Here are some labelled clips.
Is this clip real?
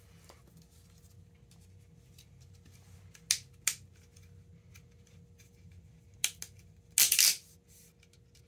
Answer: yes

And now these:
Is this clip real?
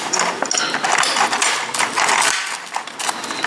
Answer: yes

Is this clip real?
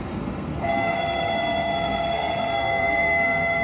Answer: no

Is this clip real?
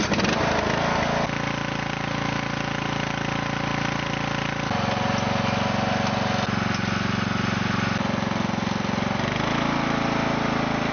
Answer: yes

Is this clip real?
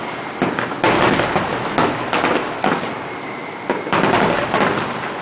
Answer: yes